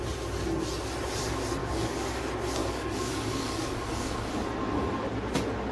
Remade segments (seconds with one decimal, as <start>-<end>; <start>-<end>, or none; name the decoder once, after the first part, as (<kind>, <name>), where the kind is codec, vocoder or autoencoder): 1.6-2.2 (codec, DAC); 2.6-4.4